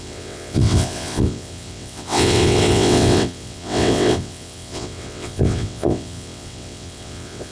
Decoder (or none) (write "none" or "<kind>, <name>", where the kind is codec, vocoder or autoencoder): vocoder, WaveNeXt